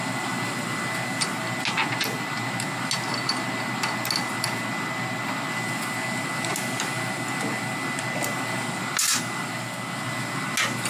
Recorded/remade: recorded